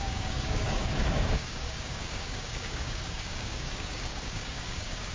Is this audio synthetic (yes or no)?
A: yes